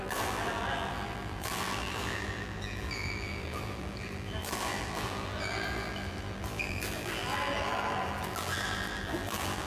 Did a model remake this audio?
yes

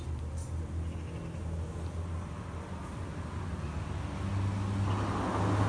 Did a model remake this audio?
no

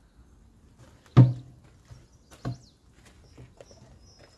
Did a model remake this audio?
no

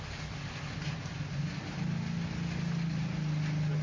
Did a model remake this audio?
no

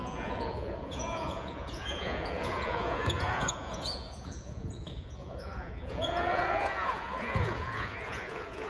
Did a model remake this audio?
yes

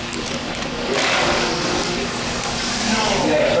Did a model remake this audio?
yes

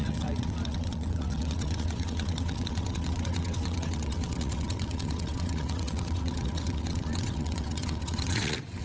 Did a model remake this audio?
yes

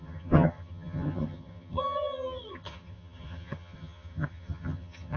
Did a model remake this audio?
yes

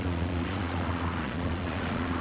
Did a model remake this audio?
yes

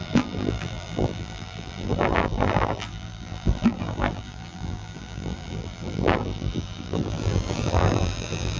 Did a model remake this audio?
yes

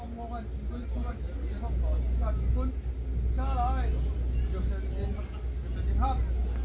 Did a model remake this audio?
no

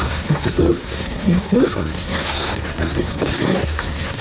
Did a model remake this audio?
yes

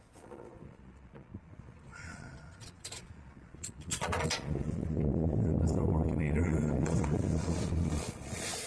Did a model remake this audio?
yes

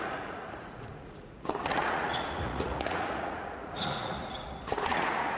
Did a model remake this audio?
yes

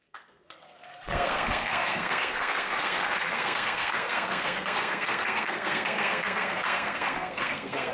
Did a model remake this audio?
yes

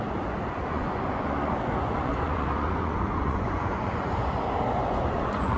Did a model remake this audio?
yes